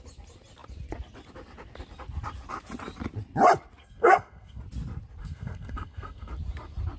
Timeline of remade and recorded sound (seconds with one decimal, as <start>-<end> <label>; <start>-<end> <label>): 0.0-3.8 recorded; 3.8-4.6 remade; 4.6-5.2 recorded; 5.2-6.3 remade; 6.3-7.0 recorded